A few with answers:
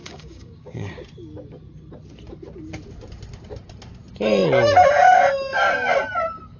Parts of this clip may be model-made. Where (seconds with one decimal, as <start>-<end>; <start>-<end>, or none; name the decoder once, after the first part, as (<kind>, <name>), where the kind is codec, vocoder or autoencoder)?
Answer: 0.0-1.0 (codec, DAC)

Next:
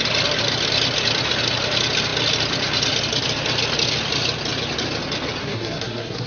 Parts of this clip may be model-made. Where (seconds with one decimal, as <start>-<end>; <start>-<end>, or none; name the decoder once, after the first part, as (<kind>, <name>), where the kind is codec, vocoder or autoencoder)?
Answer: 5.4-6.3 (codec, SNAC)

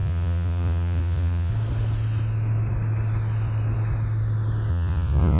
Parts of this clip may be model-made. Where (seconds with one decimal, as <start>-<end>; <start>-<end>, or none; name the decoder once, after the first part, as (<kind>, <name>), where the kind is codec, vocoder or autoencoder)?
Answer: 0.0-1.5 (vocoder, Vocos); 4.7-5.4